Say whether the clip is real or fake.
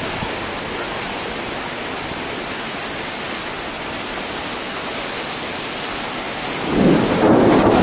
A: real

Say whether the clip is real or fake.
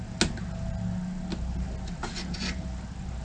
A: real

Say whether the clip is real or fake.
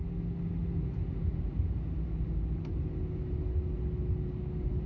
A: real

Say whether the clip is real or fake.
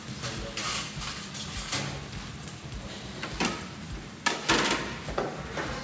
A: real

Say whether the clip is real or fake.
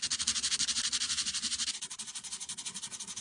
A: real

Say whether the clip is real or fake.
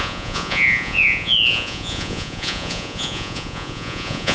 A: fake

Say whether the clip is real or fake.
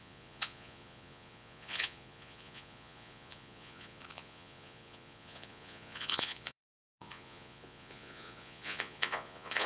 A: fake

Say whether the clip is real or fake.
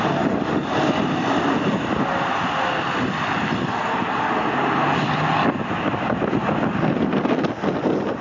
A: real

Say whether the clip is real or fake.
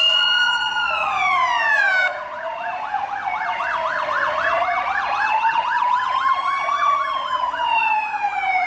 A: fake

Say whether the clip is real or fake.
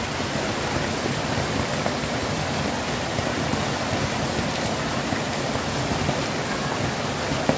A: real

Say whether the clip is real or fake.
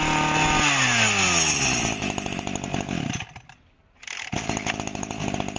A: real